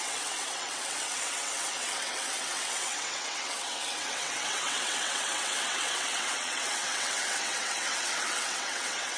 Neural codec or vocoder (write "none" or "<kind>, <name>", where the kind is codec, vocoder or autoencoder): vocoder, WaveNeXt